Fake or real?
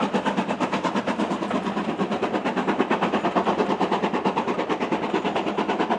real